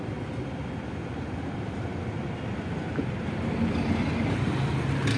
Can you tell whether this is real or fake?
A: real